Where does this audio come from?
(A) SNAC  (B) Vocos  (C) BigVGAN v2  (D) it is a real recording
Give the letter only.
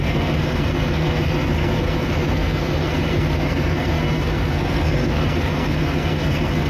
A